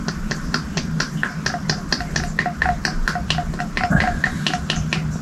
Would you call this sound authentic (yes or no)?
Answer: yes